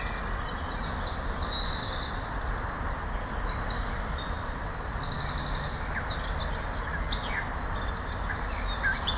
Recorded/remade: recorded